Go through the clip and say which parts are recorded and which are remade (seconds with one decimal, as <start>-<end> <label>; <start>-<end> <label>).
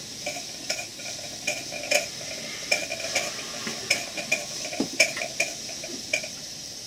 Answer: 0.0-6.9 recorded